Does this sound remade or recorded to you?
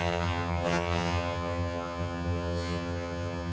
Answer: remade